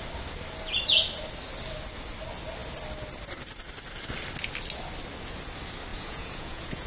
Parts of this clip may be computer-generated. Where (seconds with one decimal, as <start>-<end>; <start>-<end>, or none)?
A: 5.9-6.9